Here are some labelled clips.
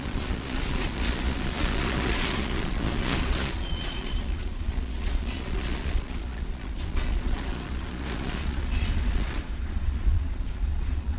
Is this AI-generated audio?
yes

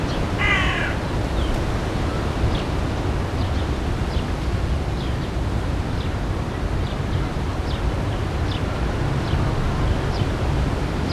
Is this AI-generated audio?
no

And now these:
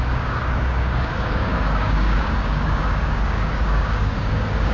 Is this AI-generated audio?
yes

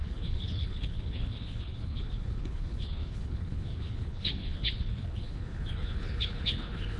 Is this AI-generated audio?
yes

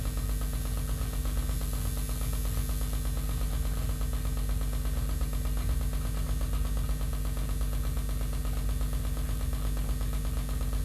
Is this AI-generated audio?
no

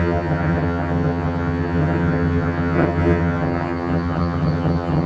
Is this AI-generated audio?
yes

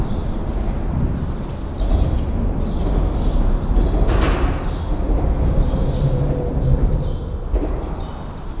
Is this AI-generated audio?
no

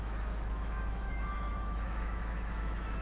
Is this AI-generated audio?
yes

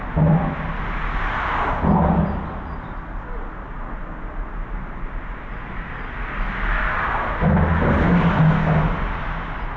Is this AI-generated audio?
no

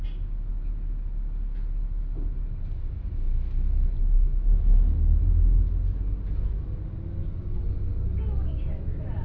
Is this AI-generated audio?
no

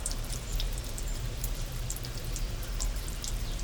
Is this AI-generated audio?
yes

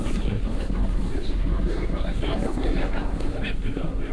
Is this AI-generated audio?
yes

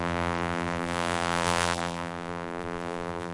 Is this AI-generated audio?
yes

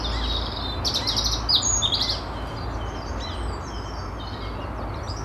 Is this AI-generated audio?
no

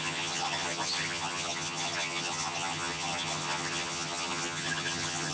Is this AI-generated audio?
yes